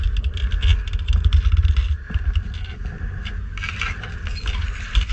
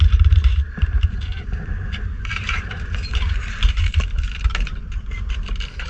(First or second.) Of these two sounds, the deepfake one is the second